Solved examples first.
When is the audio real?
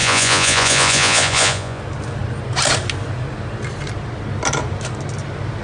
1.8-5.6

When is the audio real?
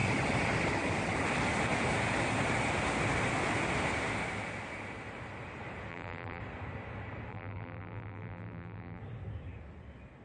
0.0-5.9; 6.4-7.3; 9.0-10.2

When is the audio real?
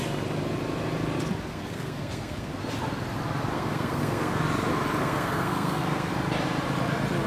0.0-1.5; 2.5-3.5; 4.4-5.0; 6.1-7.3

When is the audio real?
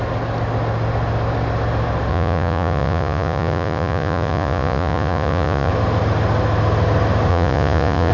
0.0-2.1; 5.7-7.3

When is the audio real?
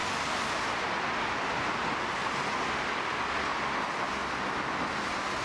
0.0-5.4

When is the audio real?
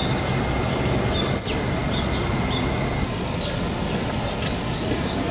0.0-5.3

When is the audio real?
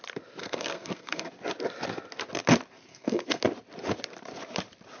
0.0-0.4; 1.3-2.9; 3.4-5.0